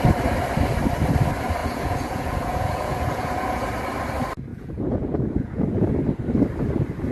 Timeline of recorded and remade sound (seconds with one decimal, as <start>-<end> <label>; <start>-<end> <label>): 0.0-1.6 recorded; 1.6-3.7 remade; 3.7-4.5 recorded; 4.5-5.9 remade; 5.9-7.1 recorded